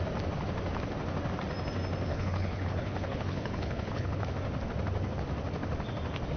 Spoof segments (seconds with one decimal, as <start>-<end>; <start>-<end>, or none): 2.1-4.2